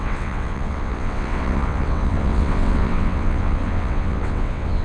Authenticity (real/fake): fake